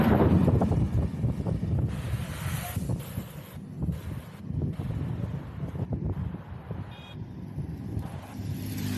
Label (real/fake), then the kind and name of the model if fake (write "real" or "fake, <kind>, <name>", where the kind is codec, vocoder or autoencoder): real